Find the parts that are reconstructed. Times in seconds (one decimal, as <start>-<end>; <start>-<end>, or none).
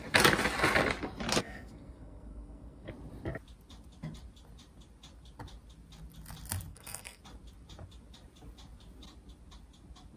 1.4-2.9; 6.7-7.2